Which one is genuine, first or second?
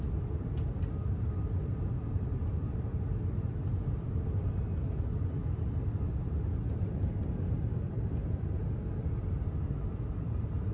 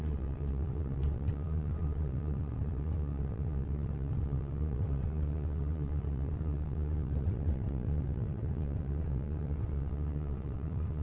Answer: first